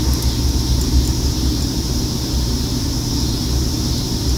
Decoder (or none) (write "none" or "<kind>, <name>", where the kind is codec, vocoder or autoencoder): vocoder, BigVGAN v2